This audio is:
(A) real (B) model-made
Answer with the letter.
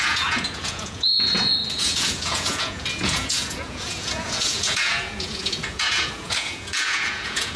B